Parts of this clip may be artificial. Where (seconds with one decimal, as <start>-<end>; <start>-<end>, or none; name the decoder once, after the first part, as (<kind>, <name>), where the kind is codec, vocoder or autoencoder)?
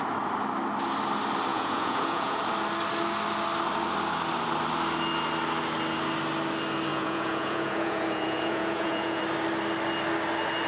1.5-2.4 (vocoder, Vocos); 6.9-9.2